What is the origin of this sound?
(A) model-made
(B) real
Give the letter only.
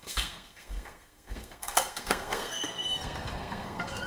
A